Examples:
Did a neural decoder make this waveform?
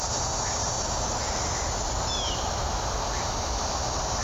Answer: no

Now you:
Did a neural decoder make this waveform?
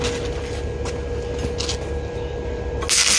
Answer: no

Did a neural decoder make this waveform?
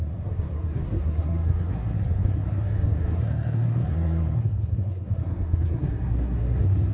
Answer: yes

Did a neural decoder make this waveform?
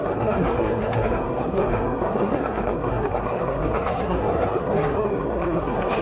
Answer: yes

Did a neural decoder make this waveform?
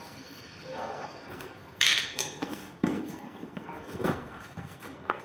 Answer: yes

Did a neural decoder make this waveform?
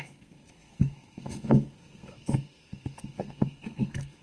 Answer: yes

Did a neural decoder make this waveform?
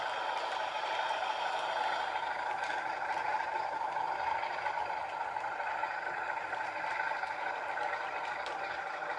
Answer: no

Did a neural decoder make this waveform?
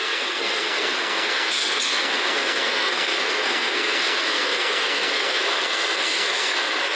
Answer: yes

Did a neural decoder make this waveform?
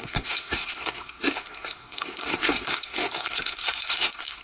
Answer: yes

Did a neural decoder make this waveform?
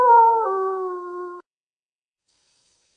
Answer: yes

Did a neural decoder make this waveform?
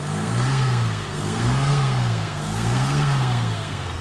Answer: yes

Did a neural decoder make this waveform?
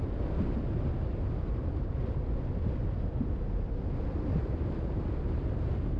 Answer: no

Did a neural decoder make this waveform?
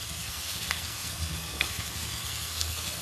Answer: yes